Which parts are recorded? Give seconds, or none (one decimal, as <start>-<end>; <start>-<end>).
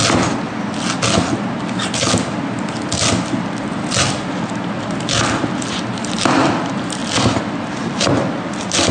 0.0-8.9